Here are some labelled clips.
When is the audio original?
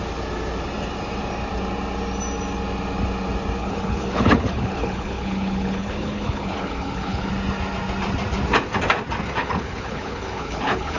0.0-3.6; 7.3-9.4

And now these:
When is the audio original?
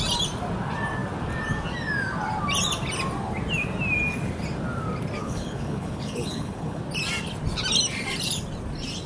0.0-5.2; 6.8-9.1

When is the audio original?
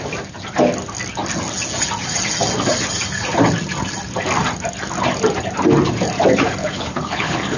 0.0-6.6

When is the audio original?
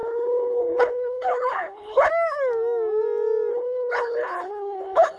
2.1-3.5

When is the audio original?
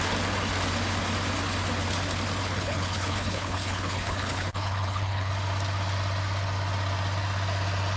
0.0-2.4; 5.3-8.0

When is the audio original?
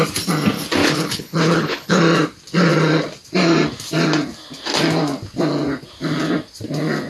0.0-0.8; 2.0-7.1